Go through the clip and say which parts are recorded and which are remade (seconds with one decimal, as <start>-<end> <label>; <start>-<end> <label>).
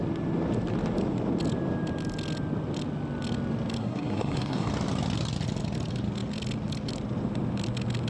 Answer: 0.0-3.8 recorded; 3.8-4.7 remade; 4.7-8.1 recorded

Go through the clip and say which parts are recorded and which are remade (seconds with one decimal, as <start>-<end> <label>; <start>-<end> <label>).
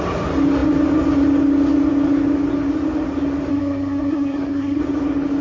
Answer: 0.0-3.5 recorded; 3.5-4.8 remade; 4.8-5.4 recorded